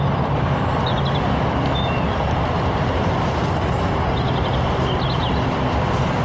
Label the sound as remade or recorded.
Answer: remade